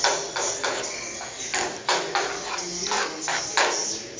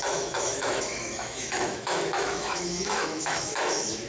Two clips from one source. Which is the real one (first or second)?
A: first